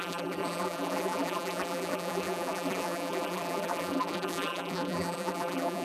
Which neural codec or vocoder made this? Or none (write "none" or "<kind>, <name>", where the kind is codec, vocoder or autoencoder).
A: vocoder, BigVGAN v2